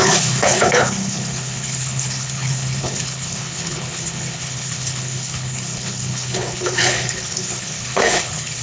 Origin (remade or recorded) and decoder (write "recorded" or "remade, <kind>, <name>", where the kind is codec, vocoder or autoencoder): remade, codec, HILCodec